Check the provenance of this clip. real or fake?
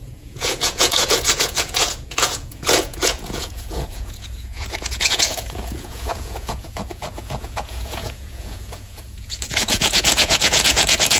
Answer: fake